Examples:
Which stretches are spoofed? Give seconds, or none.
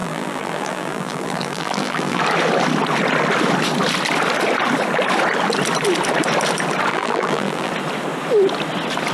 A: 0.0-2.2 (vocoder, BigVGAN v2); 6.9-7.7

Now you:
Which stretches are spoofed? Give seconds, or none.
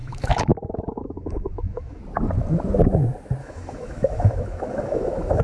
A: 0.0-2.0 (autoencoder, DAC-VAE); 3.4-5.4